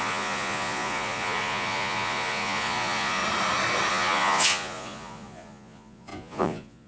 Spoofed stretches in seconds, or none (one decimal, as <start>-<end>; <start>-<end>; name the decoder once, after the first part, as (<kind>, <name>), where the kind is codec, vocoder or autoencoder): 0.0-3.2 (vocoder, Vocos); 3.9-6.9